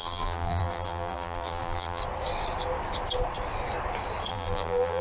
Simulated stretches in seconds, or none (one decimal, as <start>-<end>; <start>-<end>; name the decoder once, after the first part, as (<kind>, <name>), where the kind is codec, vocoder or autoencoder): 0.0-2.0 (vocoder, BigVGAN v2); 4.3-5.0